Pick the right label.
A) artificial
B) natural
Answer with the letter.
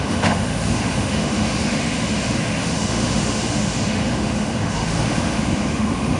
A